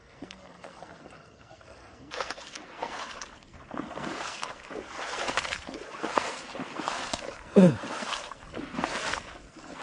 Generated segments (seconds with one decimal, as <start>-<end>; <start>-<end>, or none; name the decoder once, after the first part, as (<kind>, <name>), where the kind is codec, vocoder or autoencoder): 0.0-9.8 (codec, SNAC)

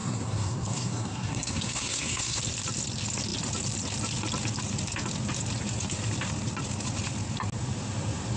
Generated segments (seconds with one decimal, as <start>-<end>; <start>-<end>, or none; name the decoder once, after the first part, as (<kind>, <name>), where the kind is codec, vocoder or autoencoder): 0.0-2.4 (codec, SNAC)

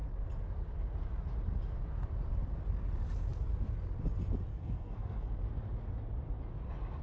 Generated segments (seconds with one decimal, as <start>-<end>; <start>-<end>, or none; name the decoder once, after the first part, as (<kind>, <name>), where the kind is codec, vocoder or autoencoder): 4.5-5.2 (codec, SNAC)

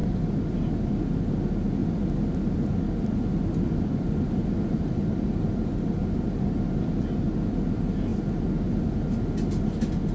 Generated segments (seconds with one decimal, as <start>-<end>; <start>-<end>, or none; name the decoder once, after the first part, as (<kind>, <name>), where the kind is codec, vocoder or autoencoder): none

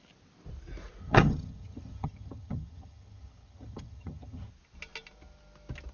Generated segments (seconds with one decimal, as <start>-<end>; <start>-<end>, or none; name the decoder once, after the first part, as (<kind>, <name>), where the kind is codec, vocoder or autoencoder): 1.0-4.5 (vocoder, HiFi-GAN)